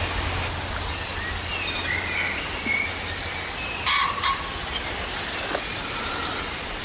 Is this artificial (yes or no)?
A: no